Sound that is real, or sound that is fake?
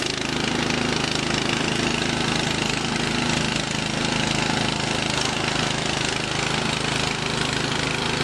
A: real